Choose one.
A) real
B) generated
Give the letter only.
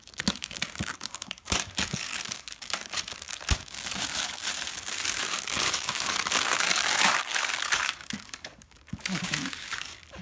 B